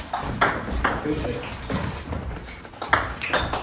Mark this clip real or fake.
real